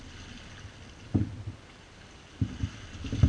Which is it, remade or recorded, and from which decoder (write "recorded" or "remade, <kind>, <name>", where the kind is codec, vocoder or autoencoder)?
recorded